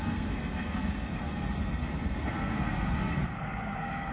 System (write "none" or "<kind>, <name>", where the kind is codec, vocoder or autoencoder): codec, SNAC